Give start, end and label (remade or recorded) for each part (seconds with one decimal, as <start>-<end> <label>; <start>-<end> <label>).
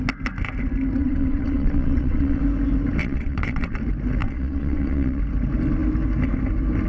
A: 0.0-1.0 recorded; 1.0-2.4 remade; 2.4-3.0 recorded; 3.0-3.8 remade; 3.8-4.2 recorded; 4.2-5.2 remade; 5.2-6.9 recorded